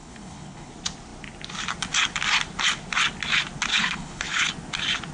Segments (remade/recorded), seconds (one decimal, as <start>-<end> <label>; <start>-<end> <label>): 0.0-0.7 remade; 0.7-3.7 recorded; 3.7-4.5 remade; 4.5-5.1 recorded